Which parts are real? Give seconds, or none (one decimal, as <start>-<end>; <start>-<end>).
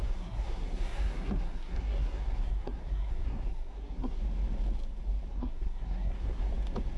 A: 4.2-5.3; 6.5-7.0